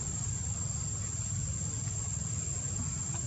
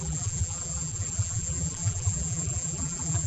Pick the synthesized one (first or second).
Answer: second